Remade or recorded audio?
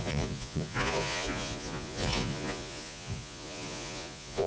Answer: remade